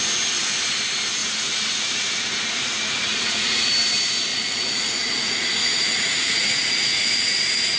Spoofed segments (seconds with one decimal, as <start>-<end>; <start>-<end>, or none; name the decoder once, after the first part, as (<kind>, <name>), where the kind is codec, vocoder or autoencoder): 1.2-3.7 (vocoder, Vocos); 4.3-7.8